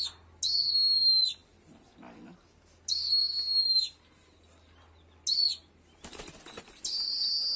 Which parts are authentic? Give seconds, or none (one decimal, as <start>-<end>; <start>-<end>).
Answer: 0.0-7.6